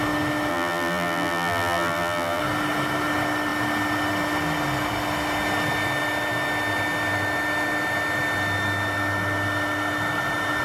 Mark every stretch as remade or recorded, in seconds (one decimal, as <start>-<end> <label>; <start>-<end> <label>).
0.0-0.5 recorded; 0.5-2.4 remade; 2.4-10.6 recorded